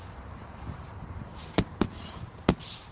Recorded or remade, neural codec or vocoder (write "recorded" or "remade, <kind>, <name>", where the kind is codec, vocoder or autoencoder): remade, vocoder, BigVGAN v2